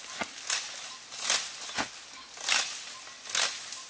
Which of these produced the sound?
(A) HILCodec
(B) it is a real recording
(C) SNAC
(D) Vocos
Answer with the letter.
B